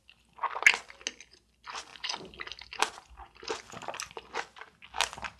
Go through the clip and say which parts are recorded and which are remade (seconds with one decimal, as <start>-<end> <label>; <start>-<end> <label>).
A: 0.0-5.4 recorded

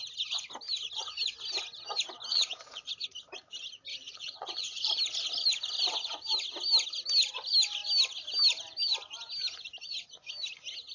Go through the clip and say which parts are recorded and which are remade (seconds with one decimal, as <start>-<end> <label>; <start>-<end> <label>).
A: 0.0-2.3 recorded; 2.3-2.9 remade; 2.9-3.9 recorded; 3.9-4.8 remade; 4.8-10.9 recorded

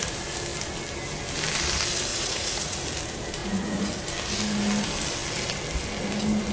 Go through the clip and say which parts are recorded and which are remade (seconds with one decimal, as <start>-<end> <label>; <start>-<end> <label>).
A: 0.0-2.1 recorded; 2.1-2.8 remade; 2.8-3.4 recorded; 3.4-3.9 remade; 3.9-6.5 recorded

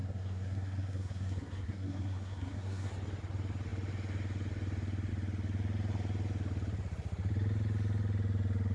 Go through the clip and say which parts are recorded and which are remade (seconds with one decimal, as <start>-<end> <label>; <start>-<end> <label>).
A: 0.0-2.9 remade; 2.9-8.7 recorded